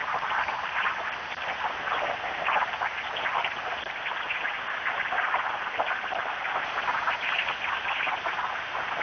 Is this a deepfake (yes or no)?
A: no